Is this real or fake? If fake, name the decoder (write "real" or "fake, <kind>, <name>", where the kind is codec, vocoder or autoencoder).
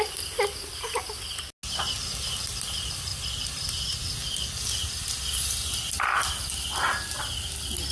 real